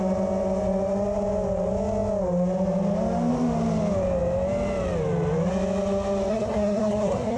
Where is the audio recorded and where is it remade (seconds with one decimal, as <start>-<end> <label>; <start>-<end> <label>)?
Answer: 0.0-6.3 recorded; 6.3-7.4 remade